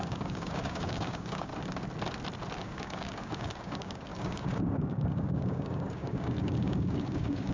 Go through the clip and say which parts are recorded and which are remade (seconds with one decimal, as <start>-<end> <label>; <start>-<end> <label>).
0.0-1.5 remade; 1.5-2.6 recorded; 2.6-7.5 remade